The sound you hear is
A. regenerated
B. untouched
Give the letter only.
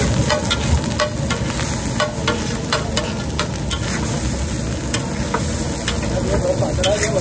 B